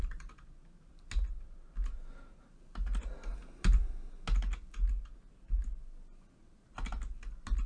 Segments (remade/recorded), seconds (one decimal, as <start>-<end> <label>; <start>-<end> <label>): 0.0-7.7 recorded